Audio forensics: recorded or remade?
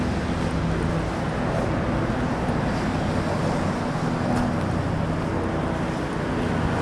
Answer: recorded